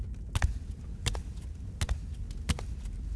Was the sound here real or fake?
real